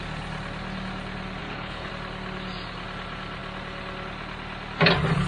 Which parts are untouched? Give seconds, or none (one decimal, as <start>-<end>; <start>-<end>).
0.0-1.4; 1.9-5.3